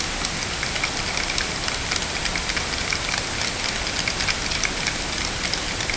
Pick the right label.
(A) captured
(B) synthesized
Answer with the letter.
A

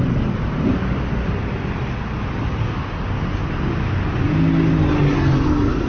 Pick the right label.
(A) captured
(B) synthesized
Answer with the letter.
A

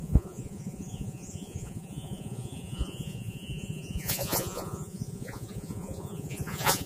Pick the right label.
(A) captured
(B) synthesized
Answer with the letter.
B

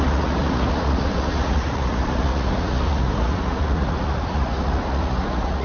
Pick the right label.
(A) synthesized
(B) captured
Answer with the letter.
A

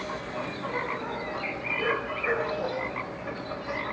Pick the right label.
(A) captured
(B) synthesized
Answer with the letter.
A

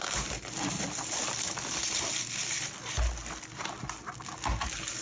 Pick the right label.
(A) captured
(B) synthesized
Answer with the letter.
A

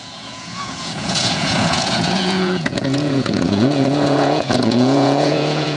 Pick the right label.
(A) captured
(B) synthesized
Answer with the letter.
B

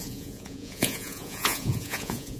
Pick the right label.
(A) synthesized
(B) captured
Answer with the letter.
A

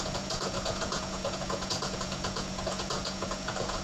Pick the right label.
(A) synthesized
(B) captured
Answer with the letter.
A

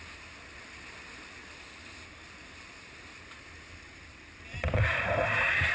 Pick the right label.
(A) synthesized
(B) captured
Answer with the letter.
B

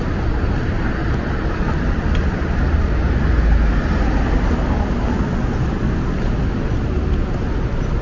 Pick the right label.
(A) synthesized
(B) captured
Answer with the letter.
B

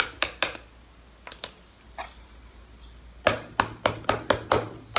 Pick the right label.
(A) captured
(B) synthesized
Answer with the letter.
A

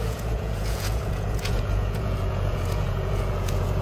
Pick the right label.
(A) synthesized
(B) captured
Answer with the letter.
A